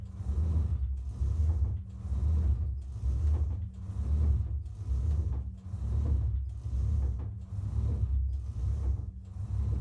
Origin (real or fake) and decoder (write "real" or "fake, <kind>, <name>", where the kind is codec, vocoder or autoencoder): real